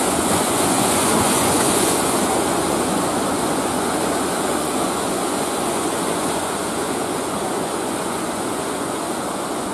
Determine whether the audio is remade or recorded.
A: remade